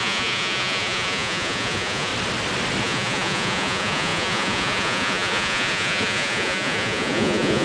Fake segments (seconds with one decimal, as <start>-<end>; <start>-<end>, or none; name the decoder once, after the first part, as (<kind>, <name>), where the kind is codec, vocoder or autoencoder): 0.0-2.1 (vocoder, Vocos); 2.8-7.6

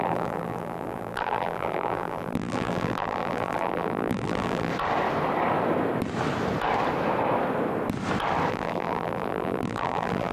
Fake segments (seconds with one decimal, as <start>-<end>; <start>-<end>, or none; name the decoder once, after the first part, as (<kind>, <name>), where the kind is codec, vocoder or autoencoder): 0.0-4.7 (vocoder, BigVGAN v2); 8.5-10.3